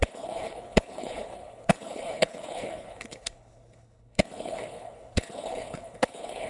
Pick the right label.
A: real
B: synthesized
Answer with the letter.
B